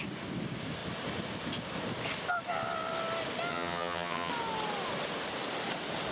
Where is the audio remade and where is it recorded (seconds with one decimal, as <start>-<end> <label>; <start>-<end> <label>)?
0.0-3.5 recorded; 3.5-4.3 remade; 4.3-6.1 recorded